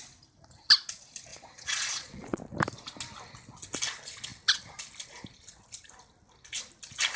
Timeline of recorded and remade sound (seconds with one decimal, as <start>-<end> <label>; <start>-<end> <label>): 0.0-1.3 recorded; 1.3-2.4 remade; 2.4-7.2 recorded